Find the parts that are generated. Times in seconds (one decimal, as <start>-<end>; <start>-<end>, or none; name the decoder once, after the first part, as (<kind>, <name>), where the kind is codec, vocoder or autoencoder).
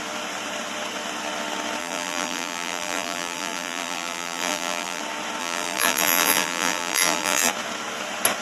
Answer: 1.8-5.0 (vocoder, BigVGAN v2); 5.4-7.5